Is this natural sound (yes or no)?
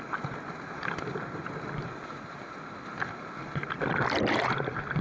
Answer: yes